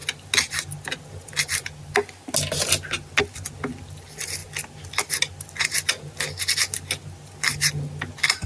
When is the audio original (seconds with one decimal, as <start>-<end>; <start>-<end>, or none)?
0.0-8.5